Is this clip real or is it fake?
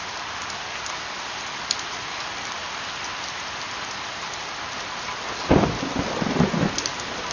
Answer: real